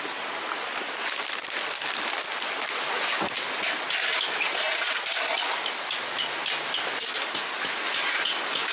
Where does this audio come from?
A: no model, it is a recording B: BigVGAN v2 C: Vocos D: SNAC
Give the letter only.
A